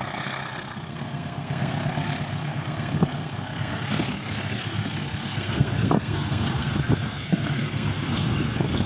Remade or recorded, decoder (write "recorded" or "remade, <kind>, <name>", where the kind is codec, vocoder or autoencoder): remade, codec, SNAC